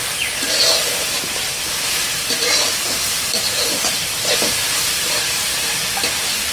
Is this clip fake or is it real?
real